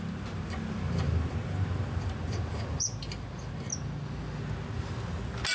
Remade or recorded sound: recorded